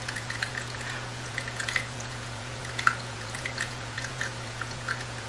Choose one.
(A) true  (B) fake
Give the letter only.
B